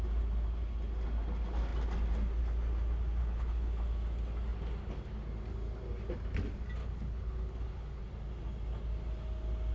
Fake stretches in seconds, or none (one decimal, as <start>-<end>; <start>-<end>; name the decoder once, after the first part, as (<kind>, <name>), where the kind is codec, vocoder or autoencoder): 3.2-3.8 (codec, HILCodec); 6.8-8.0